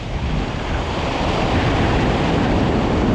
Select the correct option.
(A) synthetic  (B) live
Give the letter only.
B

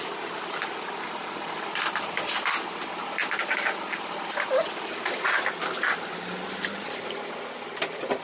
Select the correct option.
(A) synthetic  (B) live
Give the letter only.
B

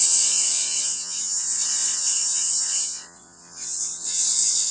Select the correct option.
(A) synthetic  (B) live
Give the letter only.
A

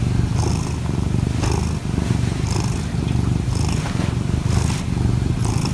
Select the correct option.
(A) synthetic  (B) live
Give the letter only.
B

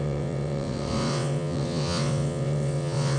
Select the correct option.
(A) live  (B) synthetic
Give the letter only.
B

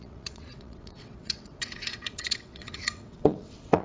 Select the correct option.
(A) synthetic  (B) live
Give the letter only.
A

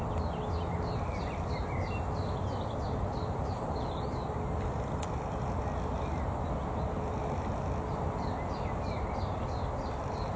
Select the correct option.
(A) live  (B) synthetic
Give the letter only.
A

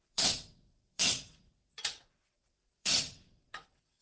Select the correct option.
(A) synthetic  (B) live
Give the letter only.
A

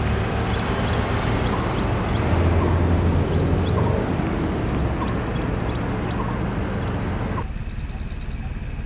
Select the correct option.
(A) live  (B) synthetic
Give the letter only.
A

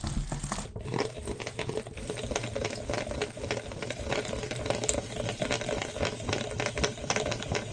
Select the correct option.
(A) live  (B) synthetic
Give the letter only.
A